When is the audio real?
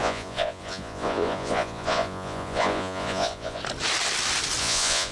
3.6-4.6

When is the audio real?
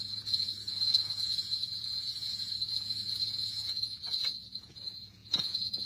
none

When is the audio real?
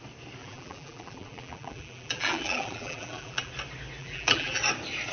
0.0-0.4; 3.5-4.0; 4.6-5.1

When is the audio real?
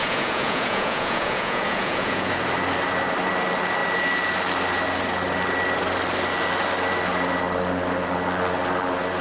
2.3-9.2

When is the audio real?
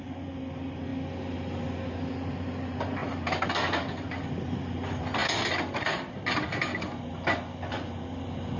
0.0-8.6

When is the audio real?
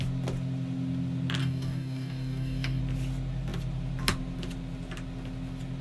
0.0-1.4; 2.8-5.8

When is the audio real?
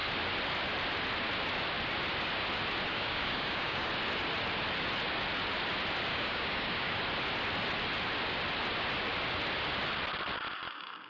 0.0-2.9; 3.9-6.1; 7.0-11.1